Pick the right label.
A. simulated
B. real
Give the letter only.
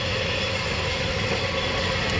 B